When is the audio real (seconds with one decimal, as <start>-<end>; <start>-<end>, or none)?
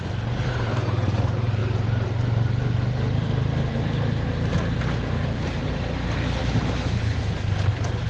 0.0-6.4; 7.2-8.1